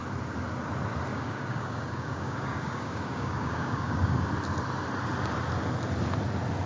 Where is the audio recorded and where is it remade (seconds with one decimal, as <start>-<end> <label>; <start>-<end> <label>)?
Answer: 0.0-1.1 recorded; 1.1-4.3 remade; 4.3-6.7 recorded